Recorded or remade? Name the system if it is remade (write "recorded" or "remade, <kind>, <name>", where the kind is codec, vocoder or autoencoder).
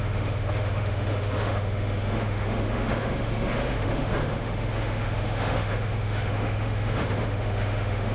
remade, autoencoder, DAC-VAE